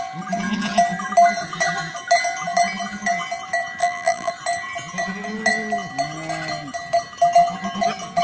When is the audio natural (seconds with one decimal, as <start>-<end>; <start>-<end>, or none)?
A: 0.0-3.8; 4.3-8.2